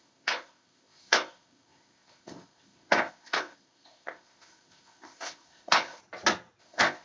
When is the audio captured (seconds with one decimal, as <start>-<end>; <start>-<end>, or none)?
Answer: 6.0-6.6